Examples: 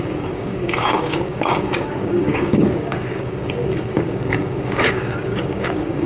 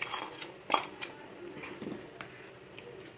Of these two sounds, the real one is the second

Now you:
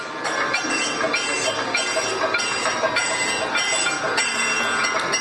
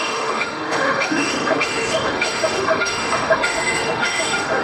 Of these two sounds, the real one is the first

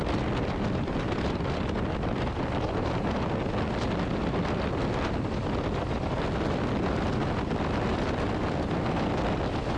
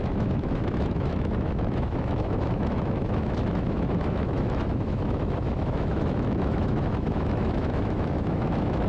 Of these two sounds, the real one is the first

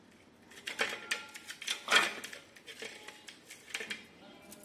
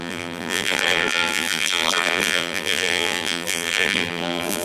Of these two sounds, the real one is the first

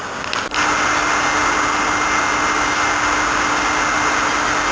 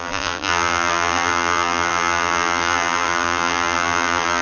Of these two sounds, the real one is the first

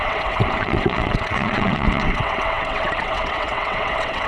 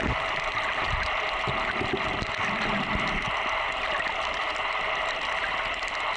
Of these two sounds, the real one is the second